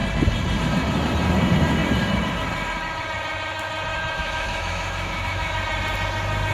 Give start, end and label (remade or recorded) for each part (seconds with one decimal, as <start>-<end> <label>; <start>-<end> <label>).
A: 0.0-3.9 recorded; 3.9-5.6 remade; 5.6-6.5 recorded